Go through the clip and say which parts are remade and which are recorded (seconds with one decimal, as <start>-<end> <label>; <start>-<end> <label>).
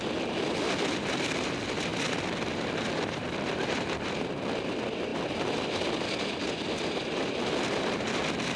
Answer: 0.0-1.9 recorded; 1.9-4.3 remade; 4.3-8.6 recorded